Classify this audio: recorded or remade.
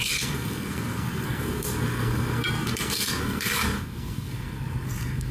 remade